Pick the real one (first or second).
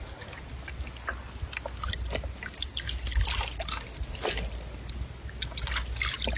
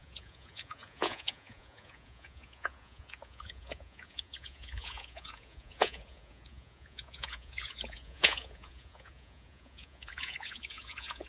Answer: first